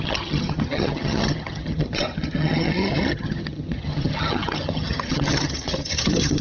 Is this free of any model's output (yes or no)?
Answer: no